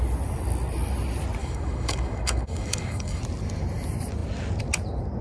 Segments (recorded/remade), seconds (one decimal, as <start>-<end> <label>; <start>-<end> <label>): 0.0-1.4 recorded; 1.4-3.2 remade; 3.2-5.2 recorded